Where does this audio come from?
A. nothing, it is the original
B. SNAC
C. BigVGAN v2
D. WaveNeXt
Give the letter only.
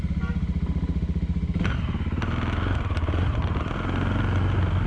A